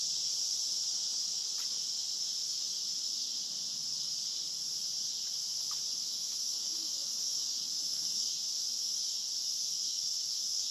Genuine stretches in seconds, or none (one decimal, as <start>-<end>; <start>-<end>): 0.0-2.4; 3.4-5.9; 9.0-9.6